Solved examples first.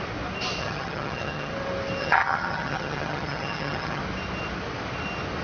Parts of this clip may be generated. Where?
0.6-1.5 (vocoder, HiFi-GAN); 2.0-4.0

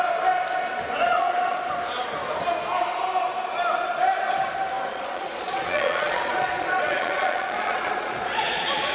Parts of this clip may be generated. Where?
1.1-1.6 (vocoder, Vocos); 4.9-8.9

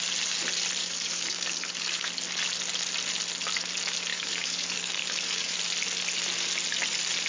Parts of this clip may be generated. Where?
0.8-2.1 (codec, DAC); 4.1-5.6

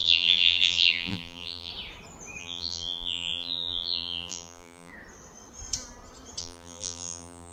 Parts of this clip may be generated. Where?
0.0-1.7 (vocoder, BigVGAN v2); 2.4-4.9; 6.4-7.5

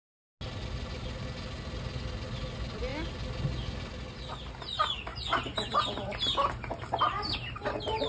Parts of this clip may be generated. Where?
none

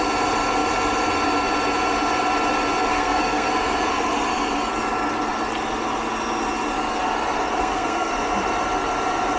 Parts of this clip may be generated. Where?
2.9-3.5 (codec, SNAC); 7.6-8.1

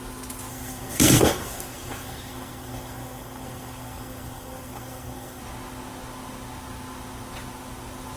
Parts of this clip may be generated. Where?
0.5-5.4 (codec, SNAC)

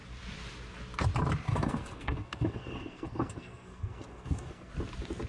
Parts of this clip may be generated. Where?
1.5-4.7 (codec, SNAC)